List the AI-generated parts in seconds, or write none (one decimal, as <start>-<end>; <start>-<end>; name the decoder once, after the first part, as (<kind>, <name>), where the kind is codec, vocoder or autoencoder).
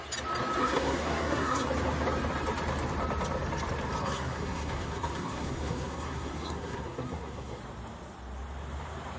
0.6-1.7 (codec, SNAC); 4.0-7.6